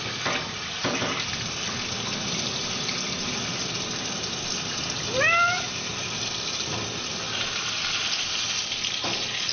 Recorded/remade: recorded